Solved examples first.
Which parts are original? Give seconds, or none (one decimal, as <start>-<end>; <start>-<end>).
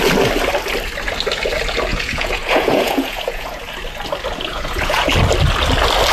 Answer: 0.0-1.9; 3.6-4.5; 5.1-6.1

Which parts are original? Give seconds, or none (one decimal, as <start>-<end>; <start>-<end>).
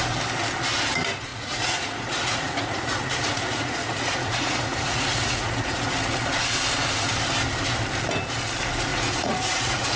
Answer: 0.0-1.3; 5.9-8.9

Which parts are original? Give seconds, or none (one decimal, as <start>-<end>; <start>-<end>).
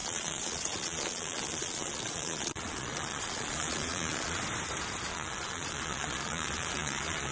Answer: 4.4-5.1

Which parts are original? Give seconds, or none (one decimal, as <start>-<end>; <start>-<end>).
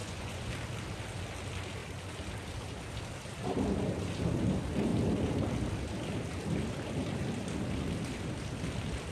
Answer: 0.5-9.1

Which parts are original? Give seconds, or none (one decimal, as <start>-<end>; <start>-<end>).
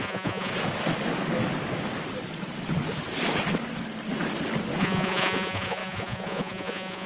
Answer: 0.5-4.8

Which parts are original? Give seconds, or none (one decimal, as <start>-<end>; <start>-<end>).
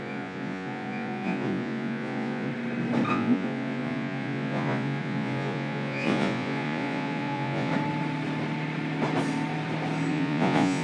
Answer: 2.5-3.1; 7.7-10.1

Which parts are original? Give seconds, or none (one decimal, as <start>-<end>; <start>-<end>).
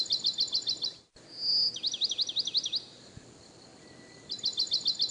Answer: 0.0-5.1